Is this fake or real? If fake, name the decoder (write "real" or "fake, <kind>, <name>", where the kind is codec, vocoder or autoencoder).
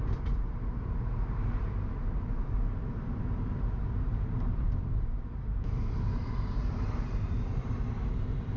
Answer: fake, vocoder, BigVGAN v2